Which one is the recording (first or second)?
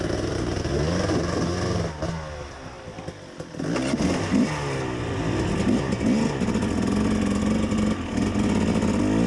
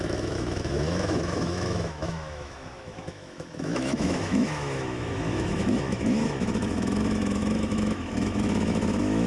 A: first